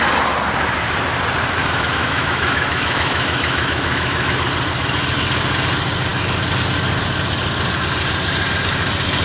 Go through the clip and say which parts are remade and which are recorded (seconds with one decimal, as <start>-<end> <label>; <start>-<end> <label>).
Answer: 0.0-1.6 recorded; 1.6-4.4 remade; 4.4-9.2 recorded